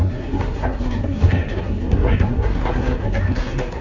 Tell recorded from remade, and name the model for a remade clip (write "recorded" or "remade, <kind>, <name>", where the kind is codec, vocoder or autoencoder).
remade, codec, SNAC